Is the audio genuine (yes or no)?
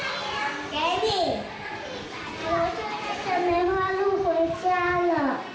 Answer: yes